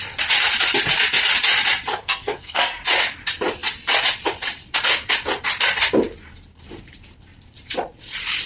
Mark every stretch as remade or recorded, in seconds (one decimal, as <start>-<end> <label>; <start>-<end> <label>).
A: 0.0-1.9 recorded; 1.9-2.8 remade; 2.8-8.5 recorded